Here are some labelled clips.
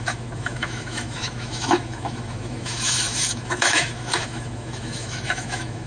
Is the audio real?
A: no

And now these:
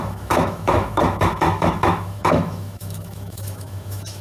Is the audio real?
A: no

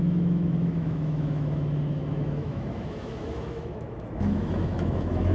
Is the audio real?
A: no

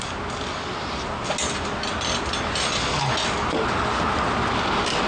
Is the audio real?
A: yes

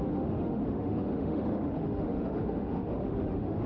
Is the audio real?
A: no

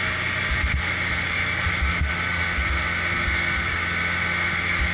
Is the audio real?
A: yes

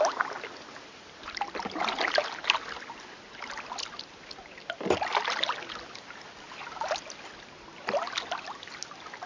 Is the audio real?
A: yes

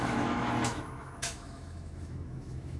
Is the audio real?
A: no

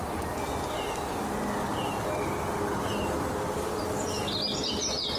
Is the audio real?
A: yes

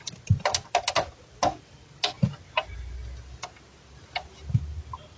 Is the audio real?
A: yes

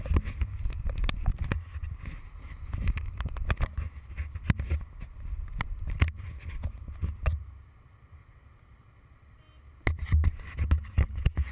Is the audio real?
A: yes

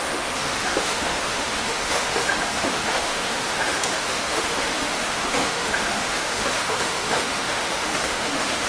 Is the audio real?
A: no